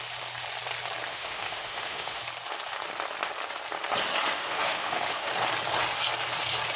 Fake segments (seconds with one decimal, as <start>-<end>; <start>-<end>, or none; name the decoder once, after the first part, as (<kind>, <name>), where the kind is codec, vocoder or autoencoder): 1.1-2.2 (autoencoder, DAC-VAE); 4.4-5.3